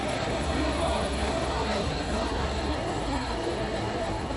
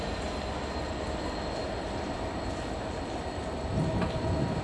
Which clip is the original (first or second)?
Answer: second